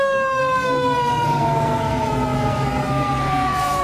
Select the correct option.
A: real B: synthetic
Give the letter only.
B